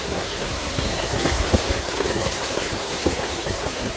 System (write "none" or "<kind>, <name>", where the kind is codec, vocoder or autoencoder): codec, SNAC